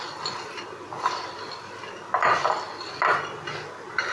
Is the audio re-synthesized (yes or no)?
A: no